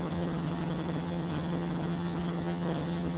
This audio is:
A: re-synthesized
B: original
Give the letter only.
A